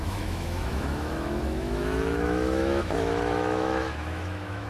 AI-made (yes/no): yes